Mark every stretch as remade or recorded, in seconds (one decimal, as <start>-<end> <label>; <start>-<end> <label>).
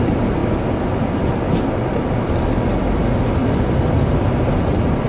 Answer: 0.0-5.1 recorded